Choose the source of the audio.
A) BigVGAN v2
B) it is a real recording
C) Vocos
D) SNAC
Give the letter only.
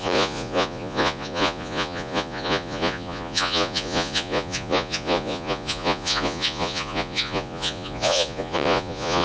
C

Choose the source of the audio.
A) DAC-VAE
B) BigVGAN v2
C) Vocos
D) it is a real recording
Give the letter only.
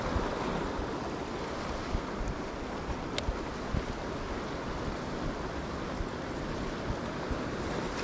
D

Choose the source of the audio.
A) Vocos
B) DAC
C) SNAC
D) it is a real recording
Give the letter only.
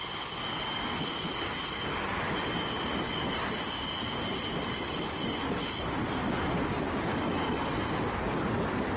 D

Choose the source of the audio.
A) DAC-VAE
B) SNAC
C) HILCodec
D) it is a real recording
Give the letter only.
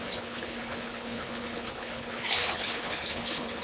C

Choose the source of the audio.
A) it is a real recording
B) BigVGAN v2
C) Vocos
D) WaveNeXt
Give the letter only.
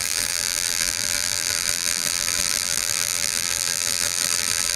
B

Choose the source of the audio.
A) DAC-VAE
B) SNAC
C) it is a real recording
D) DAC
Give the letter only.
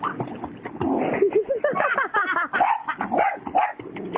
C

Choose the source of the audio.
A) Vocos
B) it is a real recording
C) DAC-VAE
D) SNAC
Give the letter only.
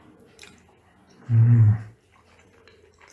B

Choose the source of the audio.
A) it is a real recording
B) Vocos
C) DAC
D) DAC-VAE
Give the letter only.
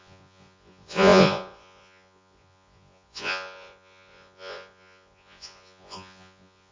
B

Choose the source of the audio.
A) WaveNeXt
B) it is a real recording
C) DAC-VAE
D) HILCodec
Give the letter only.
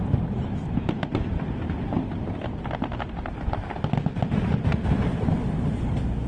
B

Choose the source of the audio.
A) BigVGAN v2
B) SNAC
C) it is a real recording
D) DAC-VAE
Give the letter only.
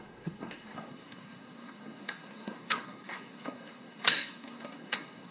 B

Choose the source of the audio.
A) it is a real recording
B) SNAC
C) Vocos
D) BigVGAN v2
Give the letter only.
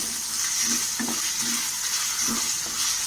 A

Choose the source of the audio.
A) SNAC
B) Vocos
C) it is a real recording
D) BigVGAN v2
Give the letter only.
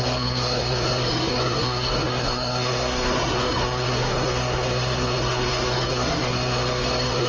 A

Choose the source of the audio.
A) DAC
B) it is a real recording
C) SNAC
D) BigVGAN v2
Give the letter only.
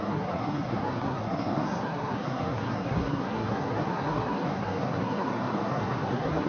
C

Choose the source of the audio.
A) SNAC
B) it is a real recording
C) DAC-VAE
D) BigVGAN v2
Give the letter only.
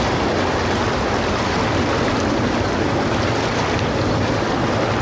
B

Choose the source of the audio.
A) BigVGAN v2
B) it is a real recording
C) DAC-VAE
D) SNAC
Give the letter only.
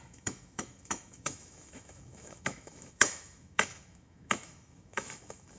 C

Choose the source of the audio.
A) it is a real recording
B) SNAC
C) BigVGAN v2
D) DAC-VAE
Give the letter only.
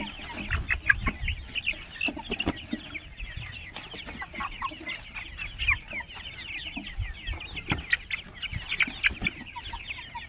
A